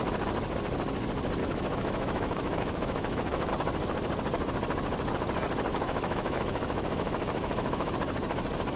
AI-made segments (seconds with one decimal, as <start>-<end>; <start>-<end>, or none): 1.4-3.5; 5.7-7.9